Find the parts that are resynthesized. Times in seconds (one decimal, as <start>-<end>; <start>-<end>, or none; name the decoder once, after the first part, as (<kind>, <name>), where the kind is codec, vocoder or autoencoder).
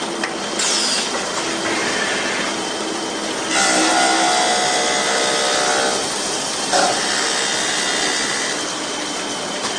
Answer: 1.8-3.1 (vocoder, BigVGAN v2)